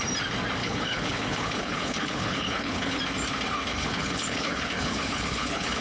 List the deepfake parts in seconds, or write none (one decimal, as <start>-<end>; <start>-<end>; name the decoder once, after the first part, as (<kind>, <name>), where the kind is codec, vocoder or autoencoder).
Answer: 0.6-3.0 (codec, HILCodec); 3.7-5.8